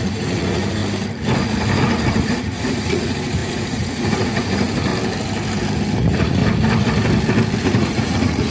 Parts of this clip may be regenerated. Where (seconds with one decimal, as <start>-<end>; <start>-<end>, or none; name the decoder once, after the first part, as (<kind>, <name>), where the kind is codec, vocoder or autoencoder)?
0.0-0.8 (vocoder, Vocos); 1.8-4.9; 6.0-6.4; 7.6-8.5

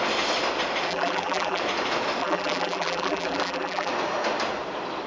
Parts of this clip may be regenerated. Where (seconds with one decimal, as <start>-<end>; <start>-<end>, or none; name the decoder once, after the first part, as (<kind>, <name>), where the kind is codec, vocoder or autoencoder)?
0.9-1.6 (vocoder, BigVGAN v2); 2.2-3.9